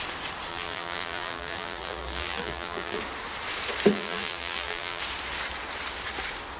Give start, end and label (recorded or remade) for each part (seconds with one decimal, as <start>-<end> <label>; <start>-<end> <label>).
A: 0.0-0.5 recorded; 0.5-3.0 remade; 3.0-3.9 recorded; 3.9-5.0 remade; 5.0-6.6 recorded